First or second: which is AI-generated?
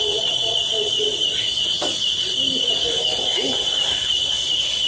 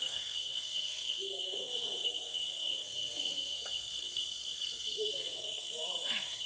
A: second